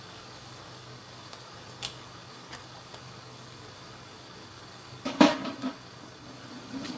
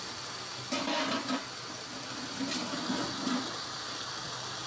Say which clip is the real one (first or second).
second